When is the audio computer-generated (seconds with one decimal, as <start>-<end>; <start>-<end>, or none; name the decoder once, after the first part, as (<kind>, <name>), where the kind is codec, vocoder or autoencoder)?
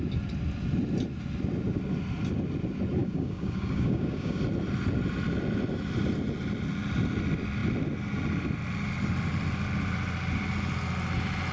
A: 3.0-4.4 (codec, DAC)